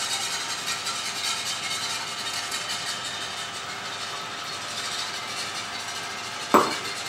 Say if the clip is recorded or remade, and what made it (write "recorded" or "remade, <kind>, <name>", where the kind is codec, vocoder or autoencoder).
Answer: recorded